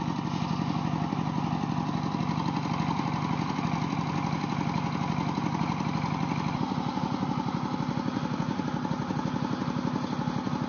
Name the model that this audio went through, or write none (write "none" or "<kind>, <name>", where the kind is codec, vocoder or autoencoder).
none